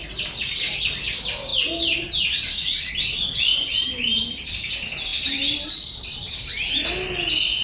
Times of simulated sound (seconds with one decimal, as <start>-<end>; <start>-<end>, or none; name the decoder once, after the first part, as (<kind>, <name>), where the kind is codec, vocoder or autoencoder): 1.5-2.9 (vocoder, BigVGAN v2); 3.5-4.5; 5.1-6.9